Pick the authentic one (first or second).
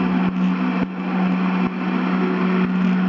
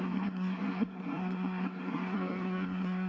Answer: first